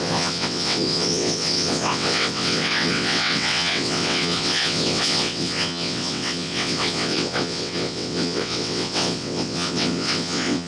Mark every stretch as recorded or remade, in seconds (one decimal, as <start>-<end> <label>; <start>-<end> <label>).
0.0-10.7 remade